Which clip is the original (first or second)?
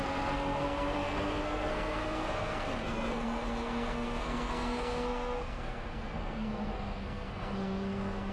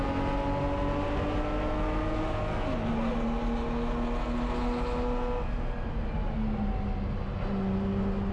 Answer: second